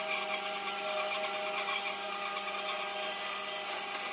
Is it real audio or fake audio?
real